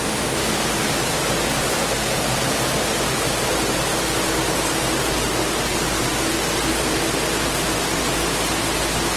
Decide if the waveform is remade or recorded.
recorded